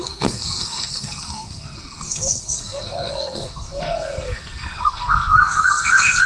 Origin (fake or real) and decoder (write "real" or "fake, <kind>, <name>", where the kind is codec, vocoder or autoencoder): fake, codec, SNAC